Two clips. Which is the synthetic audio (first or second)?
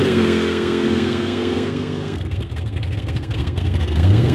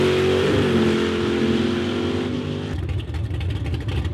first